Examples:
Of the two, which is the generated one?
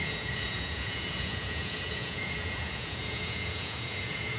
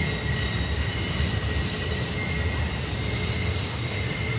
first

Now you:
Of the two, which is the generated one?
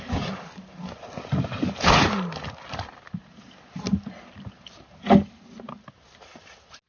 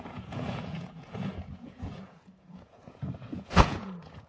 second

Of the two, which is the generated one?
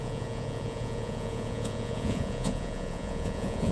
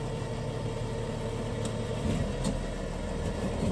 first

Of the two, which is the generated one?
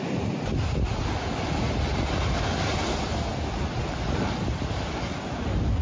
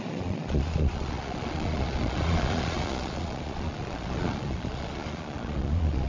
second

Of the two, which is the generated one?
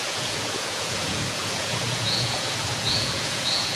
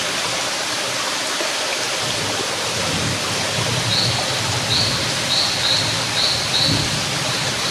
first